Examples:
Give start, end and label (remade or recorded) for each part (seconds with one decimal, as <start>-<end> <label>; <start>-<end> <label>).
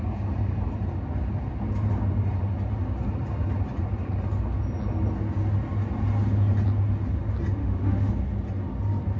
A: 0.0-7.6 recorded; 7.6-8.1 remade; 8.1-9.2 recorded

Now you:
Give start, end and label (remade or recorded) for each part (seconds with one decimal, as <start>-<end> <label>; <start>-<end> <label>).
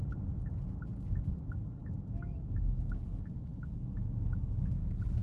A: 0.0-1.1 recorded; 1.1-5.2 remade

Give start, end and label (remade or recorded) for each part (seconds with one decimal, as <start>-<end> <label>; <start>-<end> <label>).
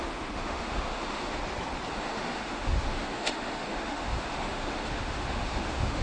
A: 0.0-1.4 remade; 1.4-1.9 recorded; 1.9-6.0 remade